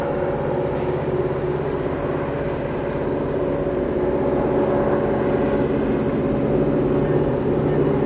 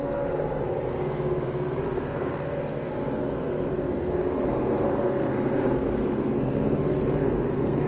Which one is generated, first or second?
second